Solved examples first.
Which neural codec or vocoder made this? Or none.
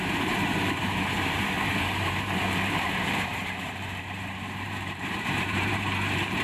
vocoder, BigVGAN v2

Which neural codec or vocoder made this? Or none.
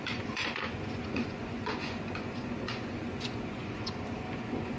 vocoder, Vocos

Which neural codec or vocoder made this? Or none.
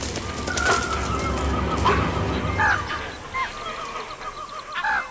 none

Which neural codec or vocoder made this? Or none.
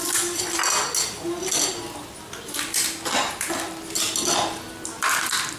none